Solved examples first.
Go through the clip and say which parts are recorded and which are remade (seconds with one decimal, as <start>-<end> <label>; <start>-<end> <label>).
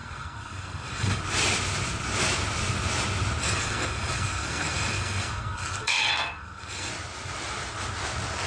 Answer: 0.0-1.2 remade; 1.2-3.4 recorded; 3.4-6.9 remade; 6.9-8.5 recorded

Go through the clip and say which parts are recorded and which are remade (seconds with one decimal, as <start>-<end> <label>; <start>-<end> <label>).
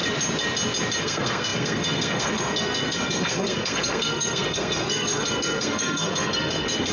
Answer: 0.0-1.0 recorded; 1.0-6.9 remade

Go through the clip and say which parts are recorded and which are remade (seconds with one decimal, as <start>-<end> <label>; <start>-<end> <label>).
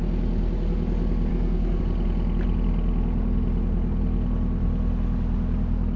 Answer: 0.0-1.3 recorded; 1.3-1.8 remade; 1.8-6.0 recorded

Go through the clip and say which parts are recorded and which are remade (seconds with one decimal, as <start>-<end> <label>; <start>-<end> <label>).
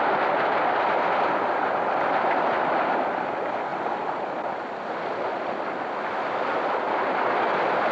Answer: 0.0-7.9 recorded